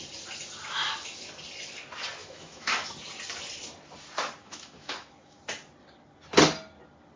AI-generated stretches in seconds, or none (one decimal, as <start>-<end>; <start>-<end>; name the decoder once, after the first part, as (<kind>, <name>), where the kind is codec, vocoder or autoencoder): 2.2-2.9 (autoencoder, DAC-VAE); 4.4-5.4